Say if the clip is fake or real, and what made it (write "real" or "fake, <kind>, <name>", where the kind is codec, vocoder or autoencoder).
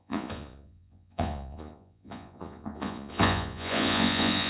fake, vocoder, Vocos